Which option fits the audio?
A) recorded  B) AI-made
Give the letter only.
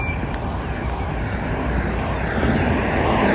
A